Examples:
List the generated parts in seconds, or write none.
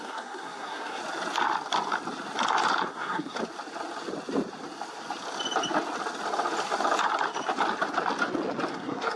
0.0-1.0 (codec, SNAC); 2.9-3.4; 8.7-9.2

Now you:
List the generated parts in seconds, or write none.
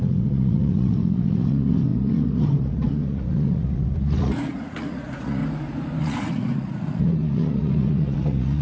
0.0-5.4 (vocoder, Vocos); 6.0-8.6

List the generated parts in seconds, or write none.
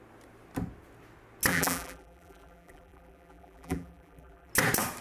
1.5-4.5 (vocoder, BigVGAN v2)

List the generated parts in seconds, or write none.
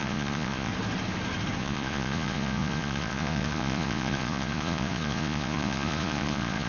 0.0-0.7 (vocoder, Vocos); 1.6-6.7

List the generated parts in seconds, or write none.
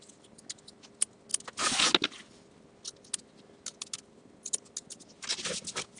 none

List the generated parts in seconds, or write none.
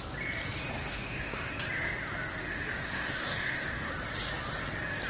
0.8-1.5 (autoencoder, DAC-VAE); 2.5-3.9